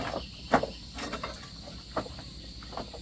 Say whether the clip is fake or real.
real